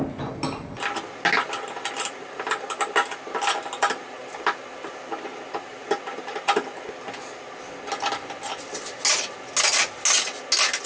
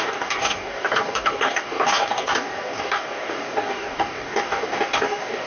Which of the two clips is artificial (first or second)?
second